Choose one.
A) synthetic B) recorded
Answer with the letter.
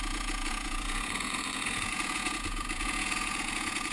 A